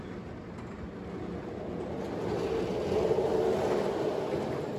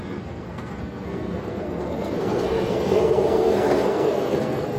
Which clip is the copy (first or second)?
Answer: second